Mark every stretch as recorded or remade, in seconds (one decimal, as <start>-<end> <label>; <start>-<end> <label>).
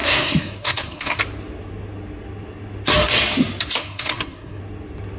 0.0-1.2 remade; 1.2-3.8 recorded; 3.8-4.6 remade; 4.6-5.2 recorded